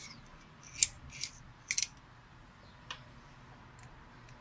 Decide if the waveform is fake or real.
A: real